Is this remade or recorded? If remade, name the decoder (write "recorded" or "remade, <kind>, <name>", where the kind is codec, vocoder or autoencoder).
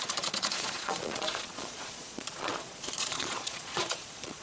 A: remade, vocoder, Vocos